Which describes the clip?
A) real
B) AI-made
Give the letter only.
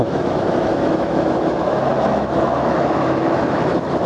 B